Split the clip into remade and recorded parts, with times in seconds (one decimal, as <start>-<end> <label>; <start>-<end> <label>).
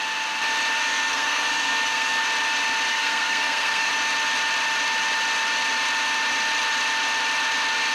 0.0-0.8 recorded; 0.8-2.2 remade; 2.2-2.9 recorded; 2.9-3.9 remade; 3.9-7.9 recorded